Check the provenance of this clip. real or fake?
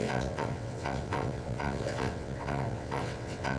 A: fake